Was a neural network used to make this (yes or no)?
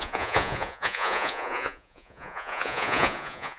yes